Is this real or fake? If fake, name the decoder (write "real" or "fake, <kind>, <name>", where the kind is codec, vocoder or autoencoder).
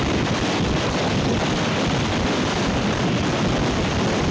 real